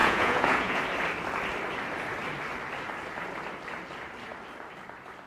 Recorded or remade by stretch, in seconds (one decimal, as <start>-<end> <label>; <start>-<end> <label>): 0.0-0.8 remade; 0.8-5.3 recorded